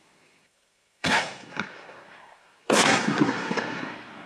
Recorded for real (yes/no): no